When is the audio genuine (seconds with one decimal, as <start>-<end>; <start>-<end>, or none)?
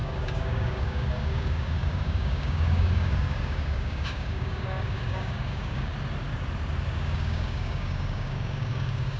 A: 5.9-6.9